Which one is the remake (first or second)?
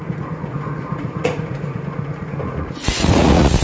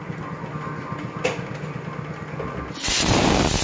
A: first